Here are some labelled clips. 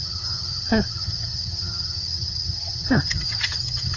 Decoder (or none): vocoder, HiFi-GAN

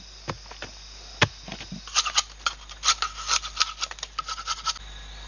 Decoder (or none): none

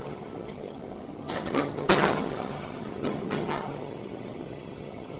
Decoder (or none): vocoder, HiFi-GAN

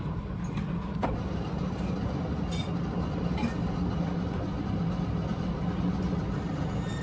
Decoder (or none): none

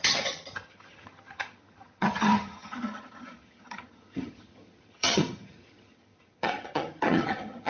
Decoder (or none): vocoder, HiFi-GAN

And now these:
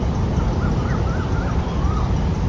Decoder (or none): none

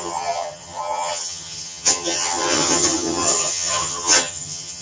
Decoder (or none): vocoder, HiFi-GAN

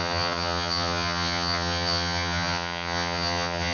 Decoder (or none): vocoder, HiFi-GAN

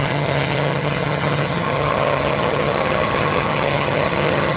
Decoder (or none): vocoder, HiFi-GAN